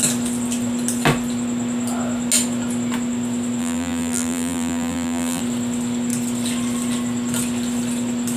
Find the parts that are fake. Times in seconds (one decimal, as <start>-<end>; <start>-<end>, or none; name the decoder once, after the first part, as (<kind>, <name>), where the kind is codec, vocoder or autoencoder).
3.6-5.4 (vocoder, BigVGAN v2)